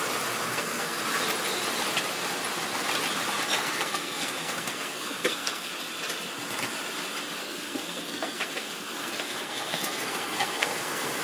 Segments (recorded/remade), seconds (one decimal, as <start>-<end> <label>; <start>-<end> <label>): 0.0-0.5 recorded; 0.5-1.0 remade; 1.0-3.6 recorded; 3.6-5.7 remade; 5.7-7.4 recorded; 7.4-11.2 remade